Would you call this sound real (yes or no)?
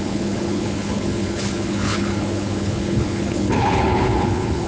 no